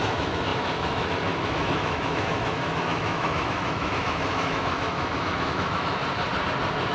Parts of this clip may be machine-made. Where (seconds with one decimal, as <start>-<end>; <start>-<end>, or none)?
0.0-6.0